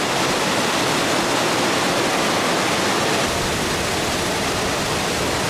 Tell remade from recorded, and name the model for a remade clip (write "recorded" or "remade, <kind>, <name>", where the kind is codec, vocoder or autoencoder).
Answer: recorded